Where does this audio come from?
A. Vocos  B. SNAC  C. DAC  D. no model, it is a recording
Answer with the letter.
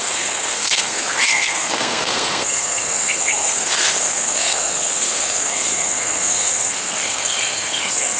B